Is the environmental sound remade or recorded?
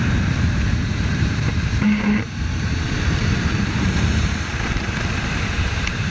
remade